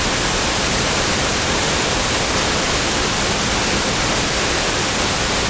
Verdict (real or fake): real